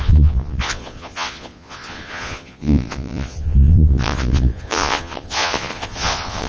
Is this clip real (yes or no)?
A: no